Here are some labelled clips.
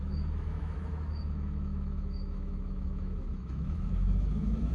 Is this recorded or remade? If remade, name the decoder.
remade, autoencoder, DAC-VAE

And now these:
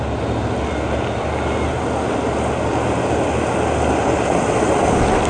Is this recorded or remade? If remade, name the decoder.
recorded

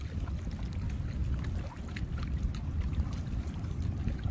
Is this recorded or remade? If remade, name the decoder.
recorded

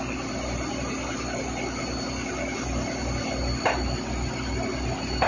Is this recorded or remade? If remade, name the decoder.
recorded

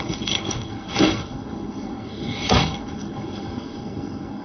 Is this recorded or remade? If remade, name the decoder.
remade, codec, SNAC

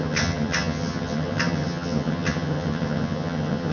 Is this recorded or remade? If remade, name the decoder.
remade, vocoder, HiFi-GAN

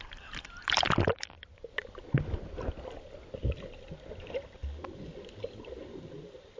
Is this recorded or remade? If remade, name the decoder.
recorded